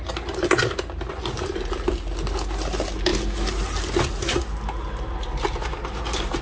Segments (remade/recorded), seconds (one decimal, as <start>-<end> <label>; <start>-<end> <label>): 0.0-6.4 recorded

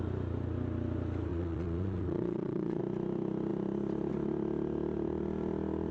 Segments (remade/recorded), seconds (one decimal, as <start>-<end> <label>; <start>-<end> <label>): 0.0-1.3 recorded; 1.3-2.8 remade; 2.8-5.9 recorded

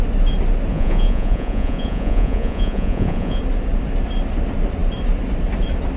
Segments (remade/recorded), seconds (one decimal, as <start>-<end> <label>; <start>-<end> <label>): 0.0-0.7 recorded; 0.7-3.4 remade; 3.4-6.0 recorded